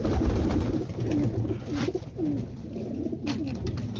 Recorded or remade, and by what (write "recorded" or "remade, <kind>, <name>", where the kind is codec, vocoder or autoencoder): recorded